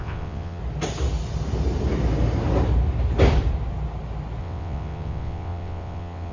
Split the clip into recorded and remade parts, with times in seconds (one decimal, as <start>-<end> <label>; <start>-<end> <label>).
0.0-0.6 remade; 0.6-4.4 recorded; 4.4-6.3 remade